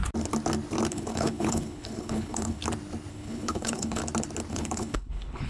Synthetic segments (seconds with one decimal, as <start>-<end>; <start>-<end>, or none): 0.9-2.6; 3.1-4.0; 4.5-5.5